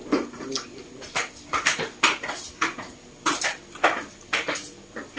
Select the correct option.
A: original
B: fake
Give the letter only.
A